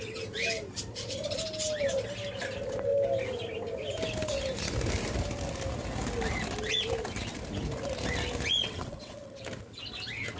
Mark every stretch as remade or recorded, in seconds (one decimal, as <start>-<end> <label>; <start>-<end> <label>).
0.0-8.6 recorded; 8.6-9.4 remade; 9.4-10.4 recorded